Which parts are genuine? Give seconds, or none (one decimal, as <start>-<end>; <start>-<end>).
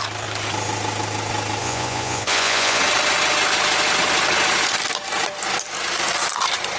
0.0-1.6; 2.8-6.8